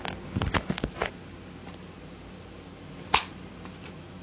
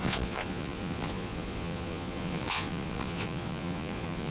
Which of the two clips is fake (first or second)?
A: second